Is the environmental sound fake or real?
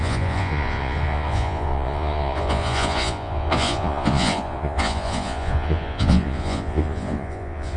fake